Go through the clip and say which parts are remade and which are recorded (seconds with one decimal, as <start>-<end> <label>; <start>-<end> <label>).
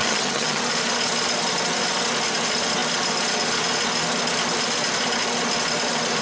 0.0-0.6 remade; 0.6-6.2 recorded